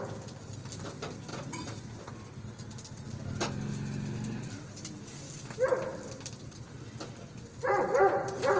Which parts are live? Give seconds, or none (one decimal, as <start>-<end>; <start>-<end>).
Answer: 0.0-1.3; 2.1-8.6